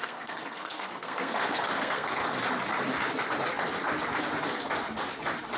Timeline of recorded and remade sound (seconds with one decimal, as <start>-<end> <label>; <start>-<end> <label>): 0.0-2.2 remade; 2.2-5.6 recorded